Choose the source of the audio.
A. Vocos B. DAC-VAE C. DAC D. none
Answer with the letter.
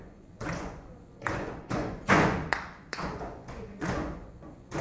A